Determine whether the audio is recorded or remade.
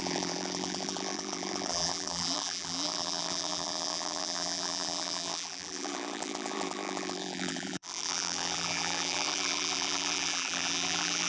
remade